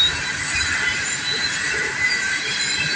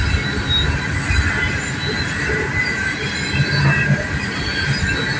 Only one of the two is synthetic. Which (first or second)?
first